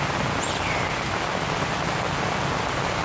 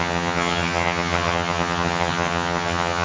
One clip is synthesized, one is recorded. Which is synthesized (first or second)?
second